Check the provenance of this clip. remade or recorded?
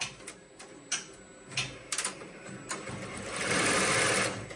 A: recorded